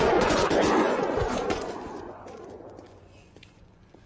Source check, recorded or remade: remade